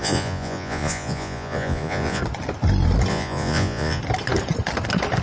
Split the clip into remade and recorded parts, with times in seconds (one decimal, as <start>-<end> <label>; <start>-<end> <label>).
0.0-2.2 remade; 2.2-3.1 recorded; 3.1-4.0 remade; 4.0-5.2 recorded